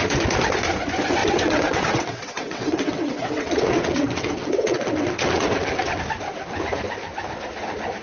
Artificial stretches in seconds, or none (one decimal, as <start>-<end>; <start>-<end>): 1.2-6.0